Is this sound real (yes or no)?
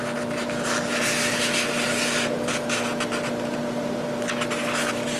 yes